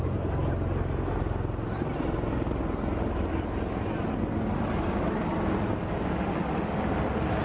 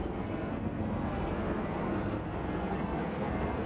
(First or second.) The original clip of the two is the first